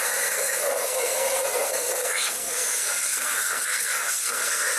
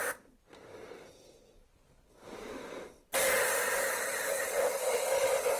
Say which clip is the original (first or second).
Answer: second